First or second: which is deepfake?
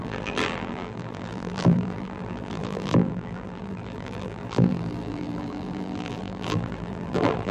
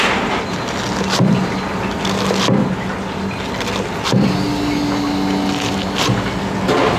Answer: first